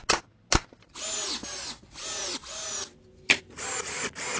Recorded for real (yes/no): yes